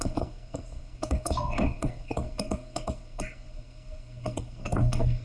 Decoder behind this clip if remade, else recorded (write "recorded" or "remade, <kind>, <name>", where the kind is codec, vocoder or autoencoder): remade, codec, SNAC